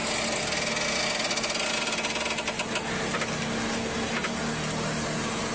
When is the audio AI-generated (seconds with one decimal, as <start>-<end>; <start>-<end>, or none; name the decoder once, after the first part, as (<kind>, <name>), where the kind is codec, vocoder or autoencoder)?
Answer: none